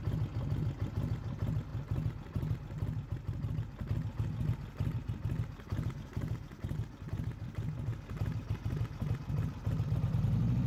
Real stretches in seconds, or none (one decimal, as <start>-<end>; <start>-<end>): 0.0-10.7